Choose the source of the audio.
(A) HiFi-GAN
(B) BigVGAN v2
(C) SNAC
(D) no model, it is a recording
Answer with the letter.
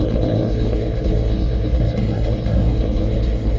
C